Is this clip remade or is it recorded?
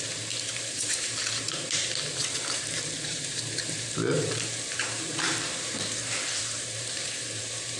remade